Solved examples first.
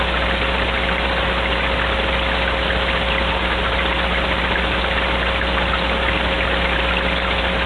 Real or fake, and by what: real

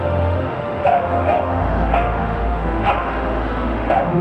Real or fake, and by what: fake, autoencoder, DAC-VAE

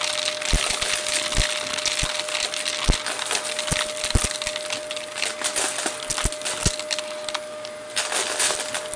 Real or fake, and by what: real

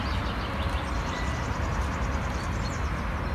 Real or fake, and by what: real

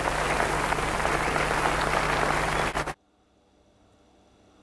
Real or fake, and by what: real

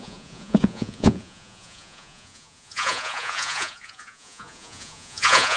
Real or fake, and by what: fake, vocoder, Vocos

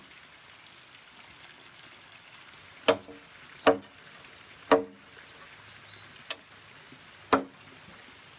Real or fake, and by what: real